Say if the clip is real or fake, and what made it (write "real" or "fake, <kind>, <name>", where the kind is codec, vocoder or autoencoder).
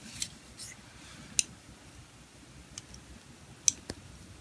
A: real